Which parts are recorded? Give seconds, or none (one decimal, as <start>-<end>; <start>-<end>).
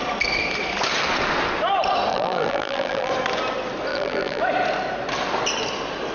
0.0-2.1; 3.1-3.9; 4.4-6.1